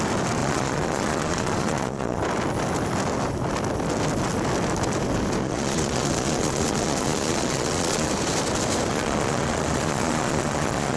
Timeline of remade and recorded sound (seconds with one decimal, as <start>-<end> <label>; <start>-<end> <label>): 0.0-0.4 recorded; 0.4-2.2 remade; 2.2-5.4 recorded; 5.4-8.1 remade; 8.1-8.9 recorded; 8.9-11.0 remade